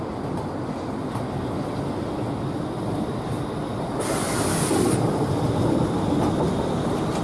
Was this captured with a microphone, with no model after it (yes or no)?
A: yes